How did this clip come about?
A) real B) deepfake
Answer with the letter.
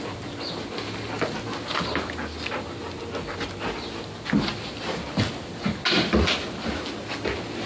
A